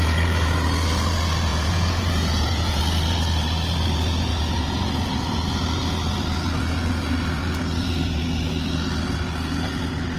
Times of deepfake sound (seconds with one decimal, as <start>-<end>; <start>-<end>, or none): 1.5-2.8; 4.3-4.9